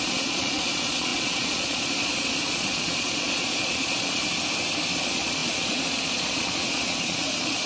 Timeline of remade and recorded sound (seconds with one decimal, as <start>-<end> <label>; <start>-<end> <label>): 0.0-4.2 remade; 4.2-5.0 recorded; 5.0-7.7 remade